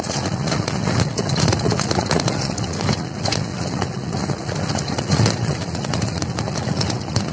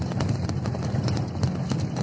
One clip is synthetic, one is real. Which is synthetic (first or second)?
first